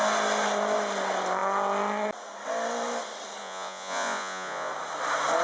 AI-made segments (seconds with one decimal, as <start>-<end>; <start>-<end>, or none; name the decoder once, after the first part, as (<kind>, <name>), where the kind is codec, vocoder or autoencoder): 3.4-4.7 (vocoder, Vocos)